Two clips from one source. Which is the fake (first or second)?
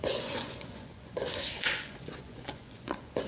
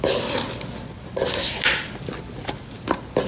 first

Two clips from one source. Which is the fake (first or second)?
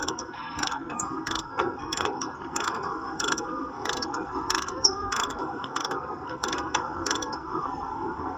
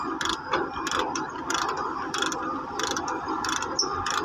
first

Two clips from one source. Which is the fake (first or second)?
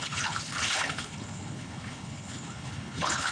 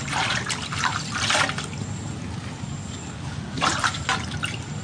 first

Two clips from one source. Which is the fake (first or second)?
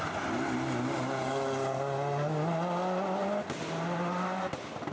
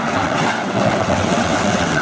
second